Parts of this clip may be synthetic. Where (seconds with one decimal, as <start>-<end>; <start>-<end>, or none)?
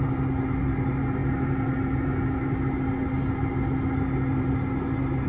none